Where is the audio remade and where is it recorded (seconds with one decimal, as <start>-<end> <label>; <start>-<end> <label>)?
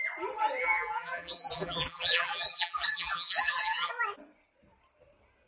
0.0-0.6 recorded; 0.6-3.9 remade; 3.9-5.5 recorded